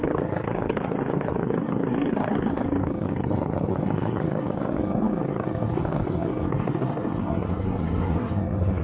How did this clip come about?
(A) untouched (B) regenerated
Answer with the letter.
B